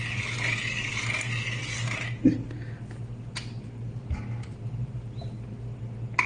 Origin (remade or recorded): recorded